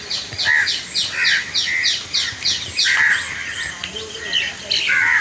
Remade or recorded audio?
recorded